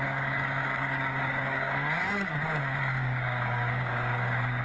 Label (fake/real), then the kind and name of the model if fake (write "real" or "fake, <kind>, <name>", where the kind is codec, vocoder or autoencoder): fake, codec, DAC